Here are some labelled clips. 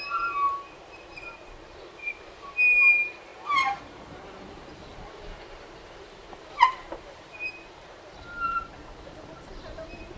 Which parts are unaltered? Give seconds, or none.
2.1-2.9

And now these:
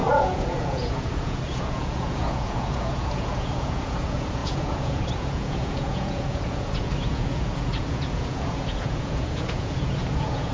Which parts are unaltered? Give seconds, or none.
none

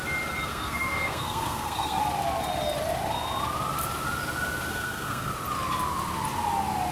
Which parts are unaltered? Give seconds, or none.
0.0-0.5; 2.0-4.7; 5.3-6.9

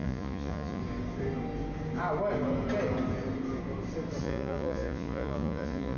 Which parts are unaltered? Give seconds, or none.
0.8-4.2

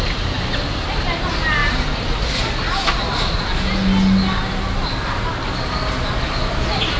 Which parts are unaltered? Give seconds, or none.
0.0-7.0

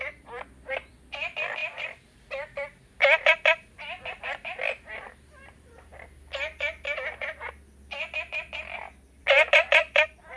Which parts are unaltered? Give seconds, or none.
5.9-9.2